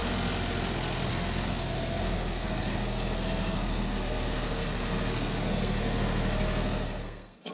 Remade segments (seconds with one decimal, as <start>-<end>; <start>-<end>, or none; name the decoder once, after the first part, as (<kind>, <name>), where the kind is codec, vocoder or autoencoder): 1.1-7.5 (codec, SNAC)